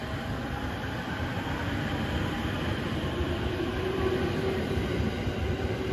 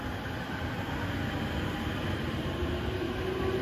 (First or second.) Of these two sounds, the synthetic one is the first